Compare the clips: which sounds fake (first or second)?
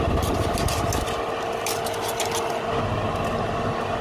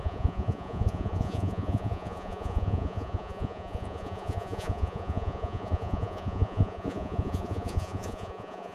second